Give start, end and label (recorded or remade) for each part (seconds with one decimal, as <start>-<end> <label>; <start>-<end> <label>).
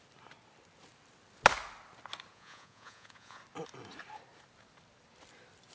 0.0-2.3 recorded; 2.3-3.4 remade; 3.4-5.7 recorded